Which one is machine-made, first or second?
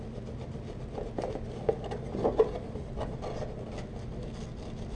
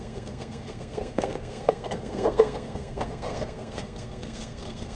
second